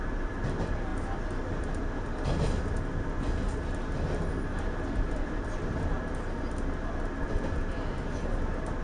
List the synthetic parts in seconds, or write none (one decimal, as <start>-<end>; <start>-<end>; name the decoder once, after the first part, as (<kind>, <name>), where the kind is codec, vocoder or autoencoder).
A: none